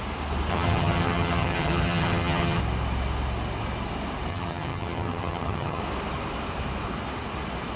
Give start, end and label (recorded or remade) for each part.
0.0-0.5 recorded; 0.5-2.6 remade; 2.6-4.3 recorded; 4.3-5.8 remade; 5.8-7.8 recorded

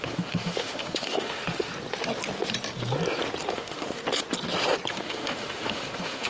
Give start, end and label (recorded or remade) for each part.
0.0-1.7 remade; 1.7-3.5 recorded; 3.5-4.0 remade; 4.0-4.9 recorded; 4.9-6.3 remade

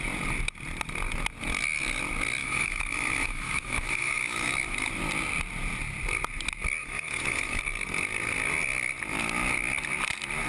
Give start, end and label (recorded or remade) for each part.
0.0-2.4 recorded; 2.4-4.9 remade; 4.9-6.8 recorded; 6.8-7.6 remade; 7.6-10.5 recorded

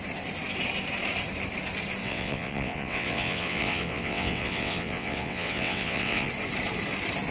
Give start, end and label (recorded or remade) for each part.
0.0-2.0 recorded; 2.0-6.3 remade; 6.3-7.3 recorded

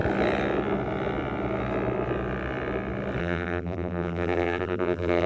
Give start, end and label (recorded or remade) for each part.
0.0-3.2 recorded; 3.2-5.3 remade

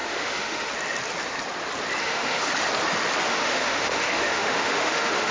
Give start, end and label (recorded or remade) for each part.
0.0-0.7 remade; 0.7-2.0 recorded; 2.0-2.5 remade; 2.5-3.3 recorded; 3.3-5.3 remade

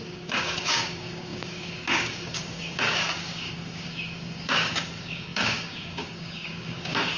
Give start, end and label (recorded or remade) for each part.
0.0-7.2 remade

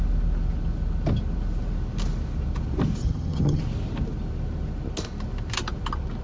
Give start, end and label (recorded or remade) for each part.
0.0-3.0 recorded; 3.0-3.6 remade; 3.6-6.2 recorded